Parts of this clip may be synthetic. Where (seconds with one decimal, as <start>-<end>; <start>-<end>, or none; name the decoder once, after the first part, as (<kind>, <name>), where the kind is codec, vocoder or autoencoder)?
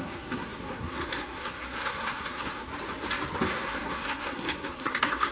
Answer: 0.0-2.7 (codec, SNAC); 3.5-5.3